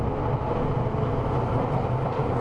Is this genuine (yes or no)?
yes